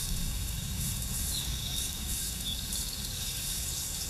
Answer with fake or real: fake